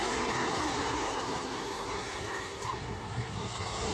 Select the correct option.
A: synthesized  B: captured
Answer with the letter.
A